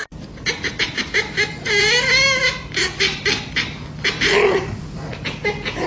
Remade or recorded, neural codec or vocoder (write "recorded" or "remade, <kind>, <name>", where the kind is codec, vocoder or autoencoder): recorded